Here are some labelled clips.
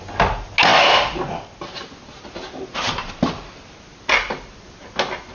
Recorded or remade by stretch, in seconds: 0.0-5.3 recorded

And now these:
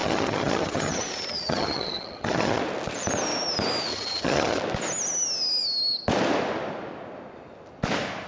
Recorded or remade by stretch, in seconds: 0.0-2.6 remade; 2.6-3.9 recorded; 3.9-4.6 remade; 4.6-8.3 recorded

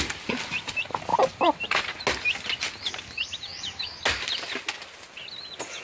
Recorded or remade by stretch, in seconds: 0.0-1.1 recorded; 1.1-2.0 remade; 2.0-5.8 recorded

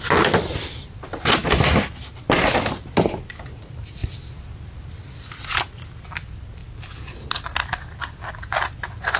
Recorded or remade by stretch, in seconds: 0.0-9.2 recorded

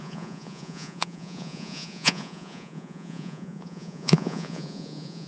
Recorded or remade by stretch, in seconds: 0.0-5.3 remade